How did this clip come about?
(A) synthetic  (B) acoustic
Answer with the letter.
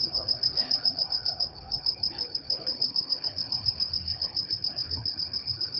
A